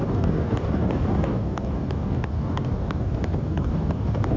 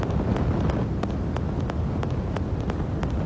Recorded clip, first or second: second